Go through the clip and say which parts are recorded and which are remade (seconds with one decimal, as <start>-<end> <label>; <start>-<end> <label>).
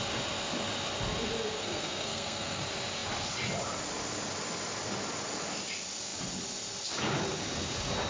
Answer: 0.0-1.6 recorded; 1.6-2.6 remade; 2.6-8.1 recorded